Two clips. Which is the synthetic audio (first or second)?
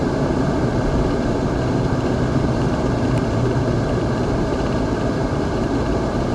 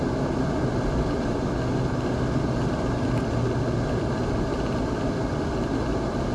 first